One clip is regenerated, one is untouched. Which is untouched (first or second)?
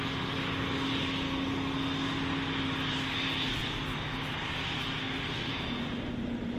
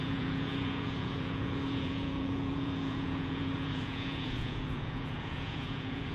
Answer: first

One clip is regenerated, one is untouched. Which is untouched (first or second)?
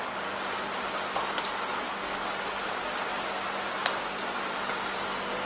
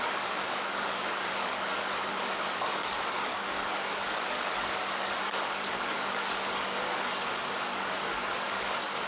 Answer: first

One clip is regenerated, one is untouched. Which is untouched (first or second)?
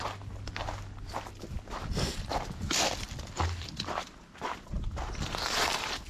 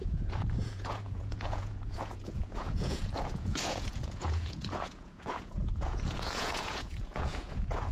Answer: first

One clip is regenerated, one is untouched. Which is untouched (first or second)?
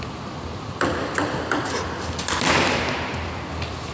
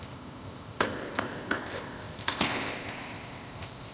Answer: first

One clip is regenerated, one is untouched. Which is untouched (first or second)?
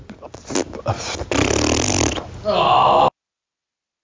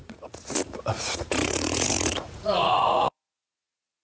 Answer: first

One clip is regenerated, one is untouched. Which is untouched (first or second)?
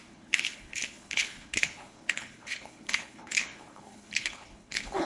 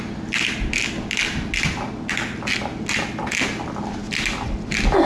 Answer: second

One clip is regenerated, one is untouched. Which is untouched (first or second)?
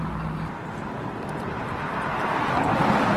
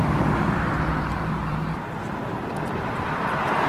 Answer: first